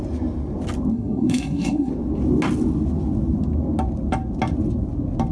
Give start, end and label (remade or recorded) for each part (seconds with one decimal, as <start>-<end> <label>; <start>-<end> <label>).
0.0-0.9 recorded; 0.9-1.9 remade; 1.9-5.3 recorded